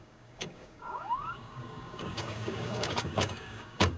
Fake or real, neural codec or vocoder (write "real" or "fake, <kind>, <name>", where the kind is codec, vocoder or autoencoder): fake, codec, DAC